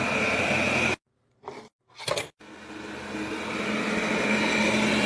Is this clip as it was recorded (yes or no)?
yes